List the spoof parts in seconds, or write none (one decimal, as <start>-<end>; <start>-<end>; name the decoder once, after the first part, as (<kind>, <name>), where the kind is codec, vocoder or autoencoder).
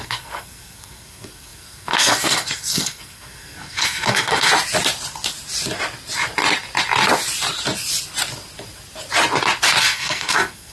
0.0-4.5 (codec, SNAC); 9.8-10.7